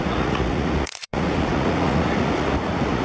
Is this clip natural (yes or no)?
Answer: no